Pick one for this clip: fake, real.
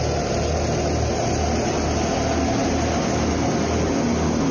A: real